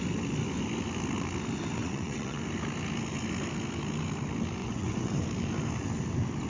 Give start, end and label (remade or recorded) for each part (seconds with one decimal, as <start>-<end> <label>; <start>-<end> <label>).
0.0-1.8 recorded; 1.8-2.4 remade; 2.4-4.6 recorded; 4.6-5.2 remade; 5.2-6.5 recorded